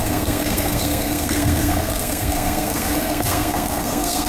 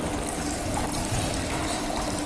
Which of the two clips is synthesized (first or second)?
first